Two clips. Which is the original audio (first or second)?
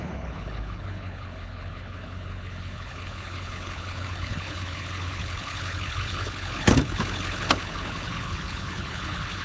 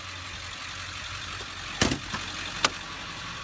second